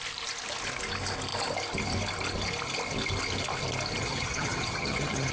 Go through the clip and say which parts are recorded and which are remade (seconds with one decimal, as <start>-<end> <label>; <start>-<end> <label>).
0.0-4.0 recorded; 4.0-5.3 remade